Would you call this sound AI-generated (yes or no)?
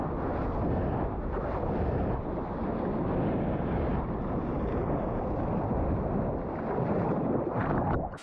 no